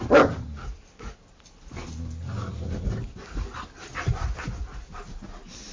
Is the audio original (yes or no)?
yes